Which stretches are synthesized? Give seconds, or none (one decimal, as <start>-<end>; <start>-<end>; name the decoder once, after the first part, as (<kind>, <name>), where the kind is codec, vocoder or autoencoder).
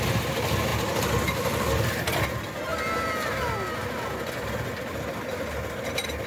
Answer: none